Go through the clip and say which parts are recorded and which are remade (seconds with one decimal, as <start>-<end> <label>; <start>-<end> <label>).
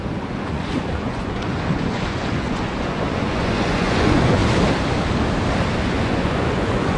0.0-4.4 remade; 4.4-5.8 recorded; 5.8-7.0 remade